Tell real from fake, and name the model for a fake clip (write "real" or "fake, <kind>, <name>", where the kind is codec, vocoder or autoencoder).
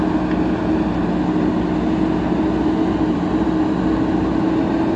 real